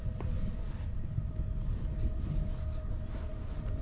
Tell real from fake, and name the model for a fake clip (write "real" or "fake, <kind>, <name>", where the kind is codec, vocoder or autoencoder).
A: real